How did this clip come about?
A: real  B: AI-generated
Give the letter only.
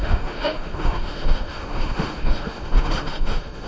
B